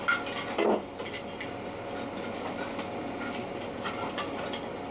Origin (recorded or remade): recorded